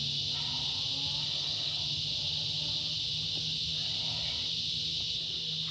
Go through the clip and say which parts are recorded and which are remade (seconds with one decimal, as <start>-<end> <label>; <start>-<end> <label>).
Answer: 0.0-1.2 recorded; 1.2-1.8 remade; 1.8-5.7 recorded